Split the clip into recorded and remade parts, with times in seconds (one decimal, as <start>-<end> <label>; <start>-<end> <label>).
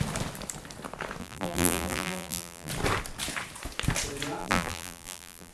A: 0.0-1.2 recorded; 1.2-2.7 remade; 2.7-4.4 recorded; 4.4-5.5 remade